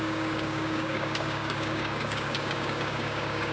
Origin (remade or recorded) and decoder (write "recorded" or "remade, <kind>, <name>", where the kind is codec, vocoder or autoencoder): remade, codec, DAC